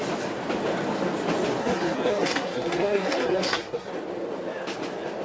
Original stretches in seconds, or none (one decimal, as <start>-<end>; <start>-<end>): 0.0-1.6; 3.9-5.2